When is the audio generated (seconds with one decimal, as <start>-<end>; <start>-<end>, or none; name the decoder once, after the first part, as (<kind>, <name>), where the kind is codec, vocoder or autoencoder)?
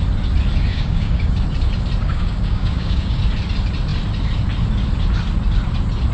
0.7-1.3 (codec, DAC); 2.0-3.2